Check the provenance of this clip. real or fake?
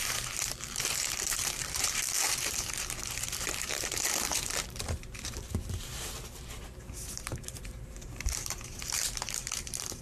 fake